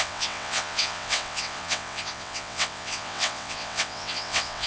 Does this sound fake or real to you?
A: fake